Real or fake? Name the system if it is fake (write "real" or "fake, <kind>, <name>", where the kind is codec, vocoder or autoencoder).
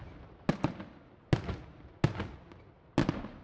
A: real